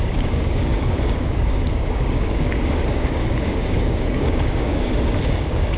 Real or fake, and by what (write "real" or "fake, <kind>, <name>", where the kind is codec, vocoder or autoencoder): fake, codec, DAC